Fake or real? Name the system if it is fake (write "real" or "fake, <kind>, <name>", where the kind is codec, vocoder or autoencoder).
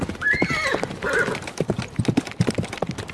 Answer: real